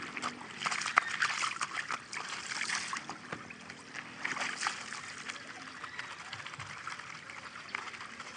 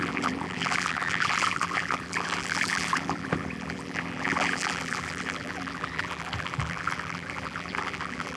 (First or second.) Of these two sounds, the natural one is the first